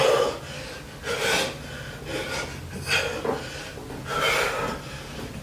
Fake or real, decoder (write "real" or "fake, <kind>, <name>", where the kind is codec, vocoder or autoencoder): real